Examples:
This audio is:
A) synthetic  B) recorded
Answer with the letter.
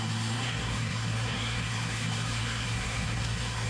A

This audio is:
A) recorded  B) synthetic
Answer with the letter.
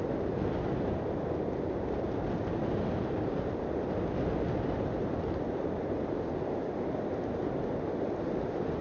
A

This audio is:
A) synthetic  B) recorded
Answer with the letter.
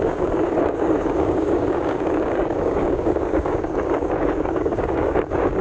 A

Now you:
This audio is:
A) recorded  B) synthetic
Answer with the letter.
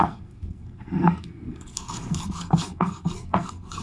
B